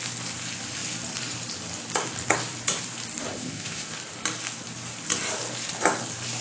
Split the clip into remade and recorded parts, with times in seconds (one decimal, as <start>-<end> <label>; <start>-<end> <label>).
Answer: 0.0-3.3 recorded; 3.3-3.9 remade; 3.9-6.4 recorded